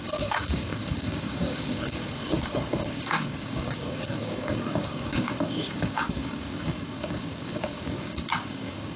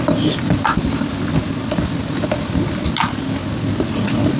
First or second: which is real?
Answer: second